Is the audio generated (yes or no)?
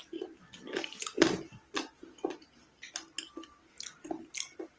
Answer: no